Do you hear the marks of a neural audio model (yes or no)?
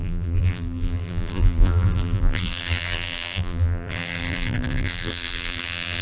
yes